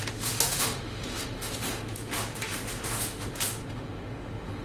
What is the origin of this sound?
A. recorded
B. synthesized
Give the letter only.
B